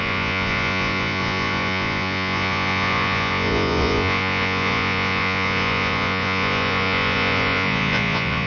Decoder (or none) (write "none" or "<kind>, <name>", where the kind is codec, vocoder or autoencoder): vocoder, Vocos